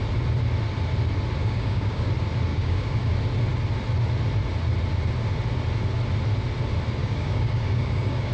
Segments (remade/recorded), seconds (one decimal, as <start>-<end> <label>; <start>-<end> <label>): 0.0-1.4 recorded; 1.4-2.1 remade; 2.1-2.5 recorded; 2.5-3.1 remade; 3.1-7.0 recorded; 7.0-8.3 remade